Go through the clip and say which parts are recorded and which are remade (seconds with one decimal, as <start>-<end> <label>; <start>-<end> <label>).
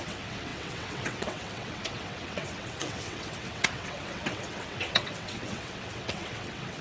0.0-6.8 remade